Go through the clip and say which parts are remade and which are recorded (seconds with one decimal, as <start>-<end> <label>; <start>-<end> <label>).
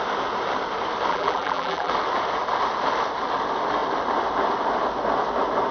0.0-1.1 recorded; 1.1-1.9 remade; 1.9-5.7 recorded